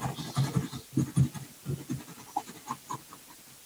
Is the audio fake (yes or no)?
no